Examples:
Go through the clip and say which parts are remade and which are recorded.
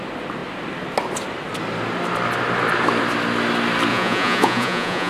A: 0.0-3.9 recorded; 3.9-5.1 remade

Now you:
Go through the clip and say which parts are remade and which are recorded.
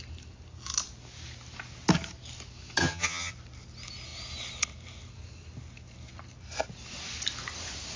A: 0.0-2.8 recorded; 2.8-3.3 remade; 3.3-8.0 recorded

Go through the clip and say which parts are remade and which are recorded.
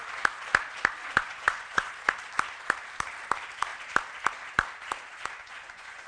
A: 0.0-1.0 recorded; 1.0-1.9 remade; 1.9-5.4 recorded; 5.4-6.1 remade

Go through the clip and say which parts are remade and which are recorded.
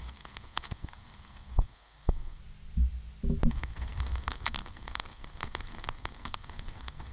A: 0.0-2.4 remade; 2.4-3.5 recorded; 3.5-7.1 remade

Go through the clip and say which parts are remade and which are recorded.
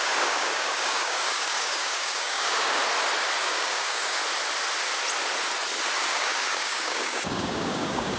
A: 0.0-2.8 remade; 2.8-3.4 recorded; 3.4-4.2 remade; 4.2-6.1 recorded; 6.1-8.2 remade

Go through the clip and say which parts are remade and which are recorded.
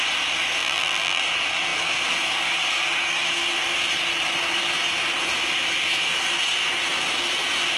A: 0.0-0.6 recorded; 0.6-1.2 remade; 1.2-7.8 recorded